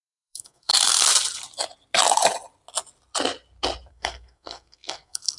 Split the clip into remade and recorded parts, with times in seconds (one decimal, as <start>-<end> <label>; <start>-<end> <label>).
0.0-0.7 remade; 0.7-3.9 recorded; 3.9-5.4 remade